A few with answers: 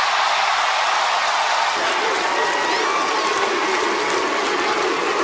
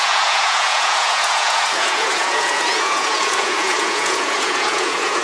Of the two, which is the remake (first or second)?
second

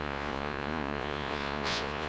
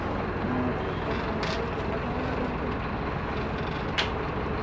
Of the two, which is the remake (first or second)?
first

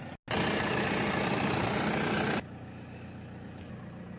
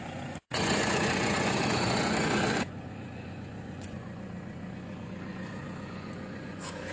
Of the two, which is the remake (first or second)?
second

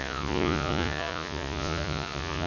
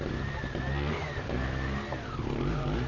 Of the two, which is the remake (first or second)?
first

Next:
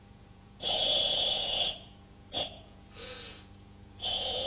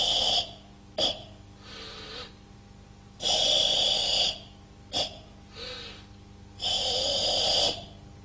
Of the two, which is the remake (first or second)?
first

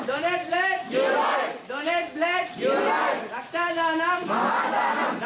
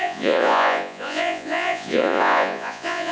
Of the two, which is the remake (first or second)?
second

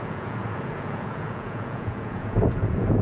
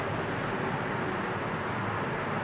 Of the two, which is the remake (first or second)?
first